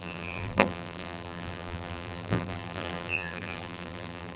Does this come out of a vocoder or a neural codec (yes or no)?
yes